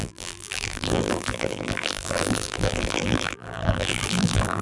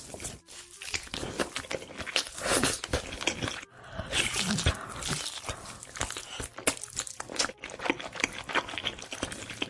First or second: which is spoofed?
first